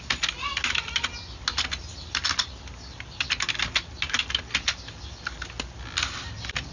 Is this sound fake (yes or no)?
no